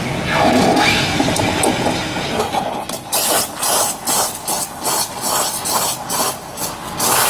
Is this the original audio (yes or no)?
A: yes